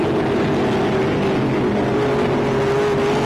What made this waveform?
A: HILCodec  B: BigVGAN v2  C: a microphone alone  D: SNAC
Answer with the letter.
C